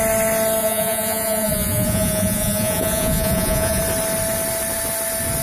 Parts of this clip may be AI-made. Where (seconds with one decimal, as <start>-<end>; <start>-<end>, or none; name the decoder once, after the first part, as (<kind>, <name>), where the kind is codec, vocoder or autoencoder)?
0.6-3.8 (vocoder, Vocos)